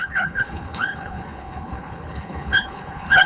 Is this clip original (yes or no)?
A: no